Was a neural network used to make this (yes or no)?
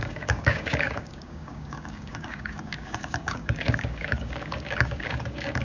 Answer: yes